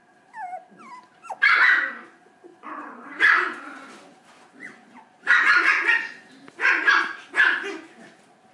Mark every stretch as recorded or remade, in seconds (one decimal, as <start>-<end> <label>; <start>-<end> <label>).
0.0-2.5 recorded; 2.5-6.3 remade; 6.3-8.5 recorded